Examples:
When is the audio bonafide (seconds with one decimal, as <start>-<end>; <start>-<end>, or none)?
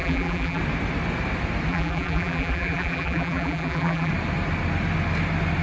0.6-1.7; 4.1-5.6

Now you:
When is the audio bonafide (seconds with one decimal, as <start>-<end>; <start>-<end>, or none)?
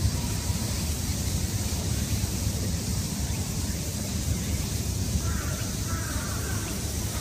1.1-1.8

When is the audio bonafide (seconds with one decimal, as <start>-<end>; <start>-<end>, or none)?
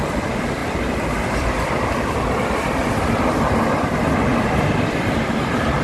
0.0-0.6; 3.0-4.3; 5.3-5.8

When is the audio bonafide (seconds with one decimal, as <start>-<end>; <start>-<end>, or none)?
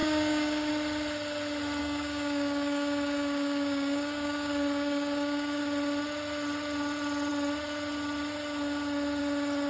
0.7-1.8; 5.6-9.7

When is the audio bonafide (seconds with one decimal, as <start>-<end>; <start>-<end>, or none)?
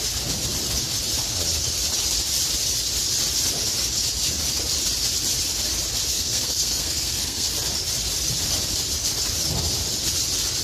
0.0-6.1; 7.5-10.6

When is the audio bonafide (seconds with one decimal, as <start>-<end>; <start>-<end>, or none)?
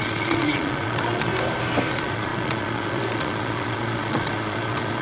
1.3-1.9